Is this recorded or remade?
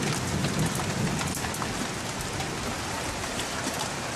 recorded